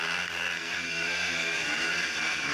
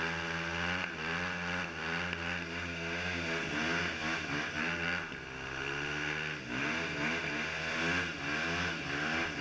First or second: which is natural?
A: second